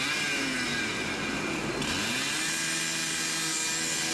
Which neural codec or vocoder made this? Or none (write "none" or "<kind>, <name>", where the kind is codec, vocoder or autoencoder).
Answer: none